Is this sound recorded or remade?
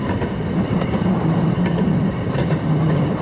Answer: recorded